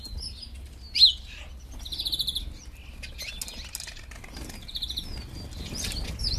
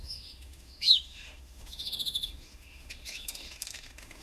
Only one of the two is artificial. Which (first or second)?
second